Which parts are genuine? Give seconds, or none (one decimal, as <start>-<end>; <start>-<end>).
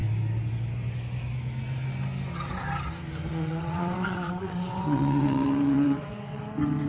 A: 0.0-3.3; 6.4-6.9